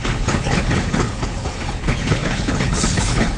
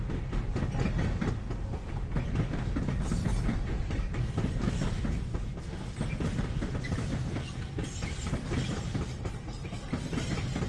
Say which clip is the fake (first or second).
first